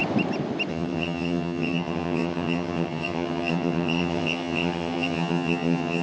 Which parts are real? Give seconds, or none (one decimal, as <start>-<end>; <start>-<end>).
0.0-0.7